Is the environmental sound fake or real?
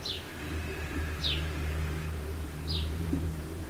fake